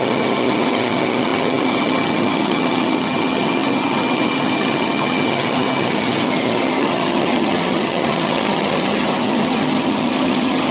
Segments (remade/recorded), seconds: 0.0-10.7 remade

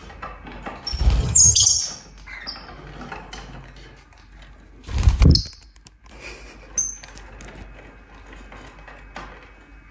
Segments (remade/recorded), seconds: 0.0-1.2 recorded; 1.2-1.8 remade; 1.8-9.9 recorded

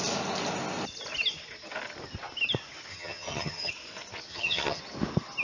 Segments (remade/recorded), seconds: 0.0-2.9 recorded; 2.9-3.7 remade; 3.7-4.3 recorded; 4.3-4.8 remade; 4.8-5.4 recorded